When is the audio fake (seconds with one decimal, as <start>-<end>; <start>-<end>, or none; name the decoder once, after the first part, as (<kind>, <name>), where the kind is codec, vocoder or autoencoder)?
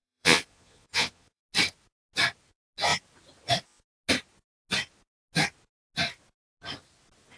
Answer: 0.0-1.4 (vocoder, Vocos)